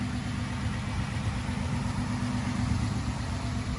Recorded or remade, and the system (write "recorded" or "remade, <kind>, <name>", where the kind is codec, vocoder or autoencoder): recorded